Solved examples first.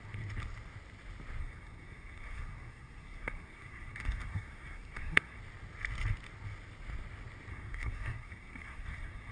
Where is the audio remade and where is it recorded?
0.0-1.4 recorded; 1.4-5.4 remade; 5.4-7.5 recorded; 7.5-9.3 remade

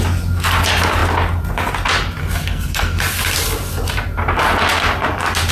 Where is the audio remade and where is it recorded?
0.0-2.2 recorded; 2.2-3.0 remade; 3.0-5.5 recorded